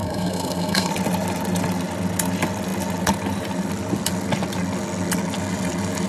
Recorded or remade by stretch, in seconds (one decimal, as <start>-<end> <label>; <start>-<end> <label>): 0.0-0.9 remade; 0.9-6.1 recorded